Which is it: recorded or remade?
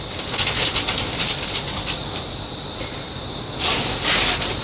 recorded